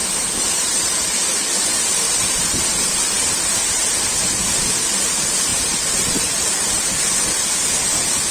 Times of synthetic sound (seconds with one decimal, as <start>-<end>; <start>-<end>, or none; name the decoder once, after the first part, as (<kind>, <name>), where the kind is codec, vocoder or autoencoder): 0.0-4.0 (vocoder, BigVGAN v2); 5.5-6.9